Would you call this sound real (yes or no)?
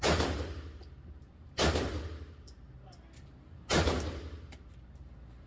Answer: no